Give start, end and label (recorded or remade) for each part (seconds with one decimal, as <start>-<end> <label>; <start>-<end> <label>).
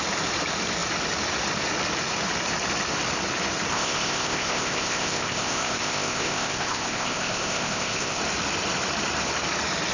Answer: 0.0-3.7 recorded; 3.7-8.2 remade; 8.2-9.9 recorded